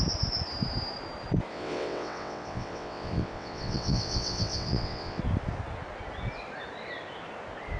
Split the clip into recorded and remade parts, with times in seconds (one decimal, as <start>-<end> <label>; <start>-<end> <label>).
0.0-1.5 recorded; 1.5-5.2 remade; 5.2-7.8 recorded

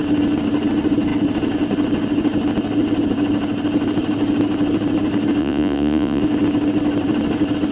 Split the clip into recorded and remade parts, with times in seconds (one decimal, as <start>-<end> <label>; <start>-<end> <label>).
0.0-5.4 recorded; 5.4-6.2 remade; 6.2-7.7 recorded

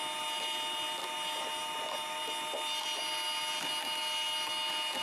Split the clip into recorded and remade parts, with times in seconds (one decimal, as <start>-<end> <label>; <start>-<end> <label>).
0.0-5.0 recorded